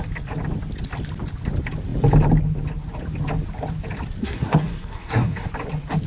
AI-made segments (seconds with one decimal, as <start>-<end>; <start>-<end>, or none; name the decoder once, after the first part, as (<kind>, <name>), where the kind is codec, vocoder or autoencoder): 4.2-5.5 (codec, SNAC)